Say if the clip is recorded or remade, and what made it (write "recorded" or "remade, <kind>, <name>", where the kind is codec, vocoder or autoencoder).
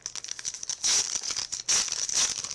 recorded